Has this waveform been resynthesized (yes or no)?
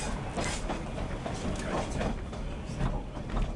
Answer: no